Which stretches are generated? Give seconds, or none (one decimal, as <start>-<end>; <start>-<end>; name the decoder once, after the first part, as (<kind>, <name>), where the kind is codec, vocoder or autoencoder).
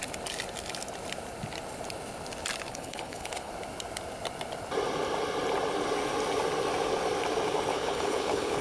2.7-3.5 (codec, HILCodec); 7.7-8.6